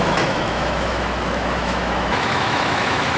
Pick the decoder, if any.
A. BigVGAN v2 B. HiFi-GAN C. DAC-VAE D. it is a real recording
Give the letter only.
C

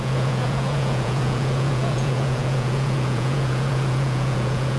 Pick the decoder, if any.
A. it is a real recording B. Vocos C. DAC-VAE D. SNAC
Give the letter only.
B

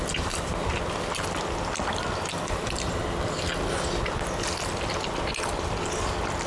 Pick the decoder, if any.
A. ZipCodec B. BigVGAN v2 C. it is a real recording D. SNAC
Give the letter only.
C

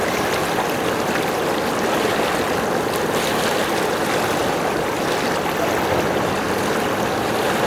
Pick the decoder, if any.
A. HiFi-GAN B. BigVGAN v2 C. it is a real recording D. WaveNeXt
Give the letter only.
C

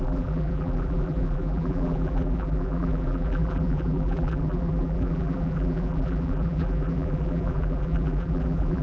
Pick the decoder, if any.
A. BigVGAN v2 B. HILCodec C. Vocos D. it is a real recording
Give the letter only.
A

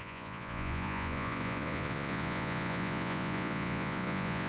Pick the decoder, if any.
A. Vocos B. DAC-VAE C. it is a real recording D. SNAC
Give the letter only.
A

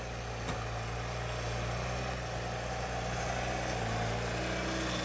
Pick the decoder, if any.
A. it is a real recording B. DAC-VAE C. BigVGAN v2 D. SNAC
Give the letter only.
A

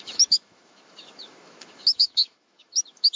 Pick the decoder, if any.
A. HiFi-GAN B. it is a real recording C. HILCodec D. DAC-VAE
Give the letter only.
D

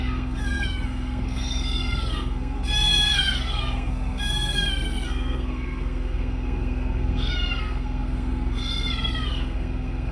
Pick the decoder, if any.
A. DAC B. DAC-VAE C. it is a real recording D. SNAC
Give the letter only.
D